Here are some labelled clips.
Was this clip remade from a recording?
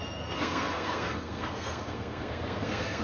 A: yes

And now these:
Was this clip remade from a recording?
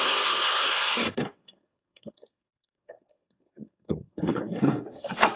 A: yes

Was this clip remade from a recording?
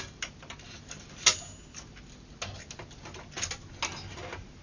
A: no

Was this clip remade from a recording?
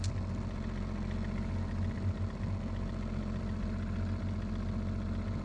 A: no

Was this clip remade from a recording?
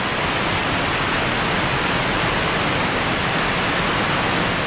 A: no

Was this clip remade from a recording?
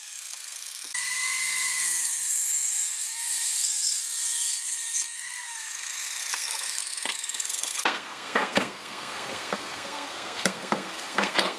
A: yes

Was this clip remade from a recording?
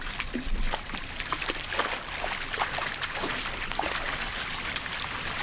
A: no